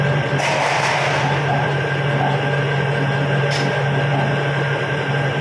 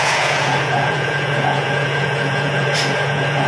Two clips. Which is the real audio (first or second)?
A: first